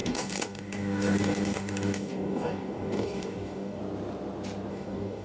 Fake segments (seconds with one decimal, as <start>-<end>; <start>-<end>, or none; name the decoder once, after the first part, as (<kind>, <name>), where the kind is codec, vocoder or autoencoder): 0.0-3.8 (codec, DAC); 4.7-5.2